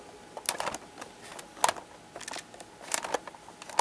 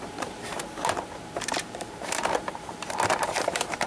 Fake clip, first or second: second